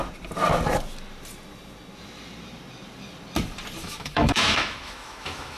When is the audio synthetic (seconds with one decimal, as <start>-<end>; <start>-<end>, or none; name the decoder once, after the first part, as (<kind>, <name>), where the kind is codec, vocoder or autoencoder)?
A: 3.8-5.6 (autoencoder, DAC-VAE)